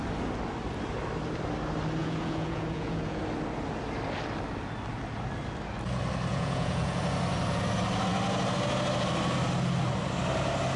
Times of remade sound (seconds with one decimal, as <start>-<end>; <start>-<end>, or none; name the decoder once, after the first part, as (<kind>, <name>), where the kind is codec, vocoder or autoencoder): 2.0-3.2 (vocoder, Vocos); 6.3-7.0